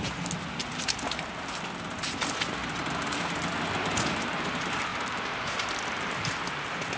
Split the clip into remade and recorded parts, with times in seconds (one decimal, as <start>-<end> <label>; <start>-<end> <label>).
0.0-0.6 recorded; 0.6-1.3 remade; 1.3-4.9 recorded; 4.9-6.3 remade; 6.3-7.0 recorded